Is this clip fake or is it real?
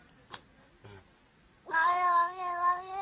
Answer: real